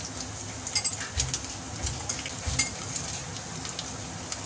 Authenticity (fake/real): real